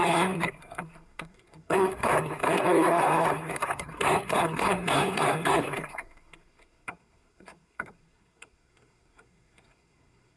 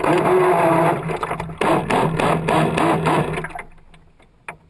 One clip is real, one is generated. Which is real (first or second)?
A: second